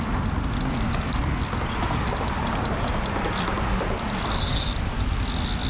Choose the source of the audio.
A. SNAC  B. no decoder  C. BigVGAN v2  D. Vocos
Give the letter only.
B